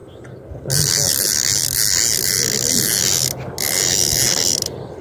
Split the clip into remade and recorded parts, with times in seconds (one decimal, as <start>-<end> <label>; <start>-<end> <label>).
0.0-5.0 recorded